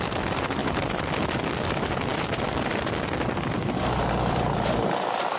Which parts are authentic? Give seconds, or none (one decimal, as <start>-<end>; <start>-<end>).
0.0-2.1